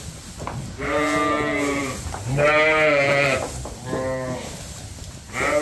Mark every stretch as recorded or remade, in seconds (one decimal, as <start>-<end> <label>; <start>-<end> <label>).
0.0-5.6 recorded